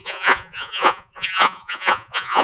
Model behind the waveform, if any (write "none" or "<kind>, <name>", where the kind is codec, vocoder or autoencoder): vocoder, Vocos